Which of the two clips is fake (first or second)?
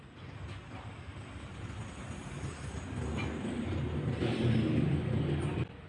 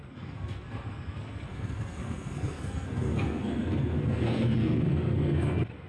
second